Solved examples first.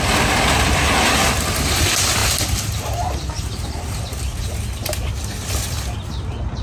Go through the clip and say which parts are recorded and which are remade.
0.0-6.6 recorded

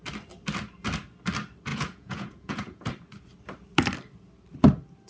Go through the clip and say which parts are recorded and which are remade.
0.0-1.7 recorded; 1.7-2.9 remade; 2.9-5.1 recorded

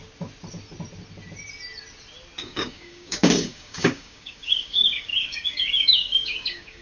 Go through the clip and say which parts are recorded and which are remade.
0.0-2.4 recorded; 2.4-6.8 remade

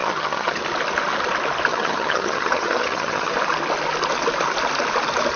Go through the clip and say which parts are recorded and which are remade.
0.0-0.6 remade; 0.6-1.7 recorded; 1.7-3.3 remade; 3.3-5.4 recorded